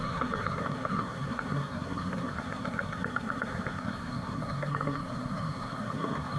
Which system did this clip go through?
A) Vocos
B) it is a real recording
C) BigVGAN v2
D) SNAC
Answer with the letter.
D